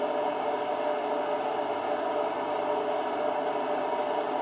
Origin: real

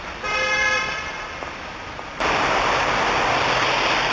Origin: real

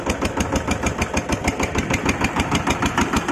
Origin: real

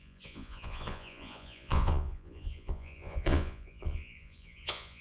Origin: fake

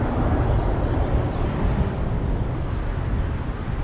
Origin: real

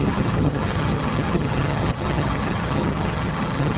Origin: fake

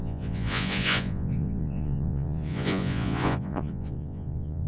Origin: fake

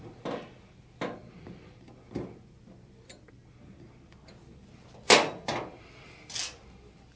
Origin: real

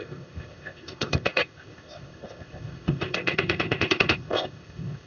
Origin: fake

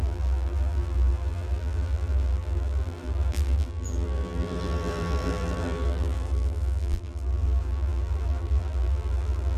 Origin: fake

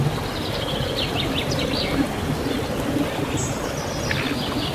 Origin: real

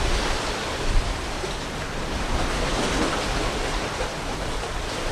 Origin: real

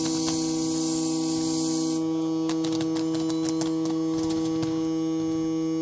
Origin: real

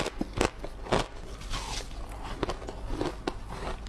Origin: real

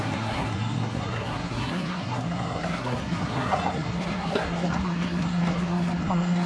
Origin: fake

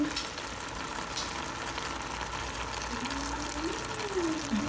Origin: real